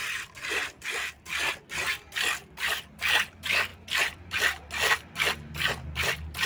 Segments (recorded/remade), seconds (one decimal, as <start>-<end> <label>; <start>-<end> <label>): 0.0-6.5 recorded